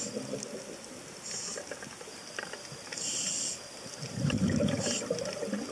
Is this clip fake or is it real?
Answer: real